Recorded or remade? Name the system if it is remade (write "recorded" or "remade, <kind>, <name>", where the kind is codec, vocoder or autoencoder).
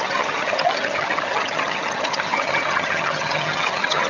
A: remade, vocoder, HiFi-GAN